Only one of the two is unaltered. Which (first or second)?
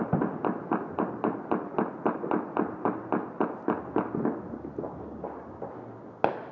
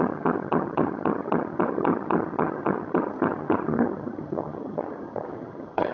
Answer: first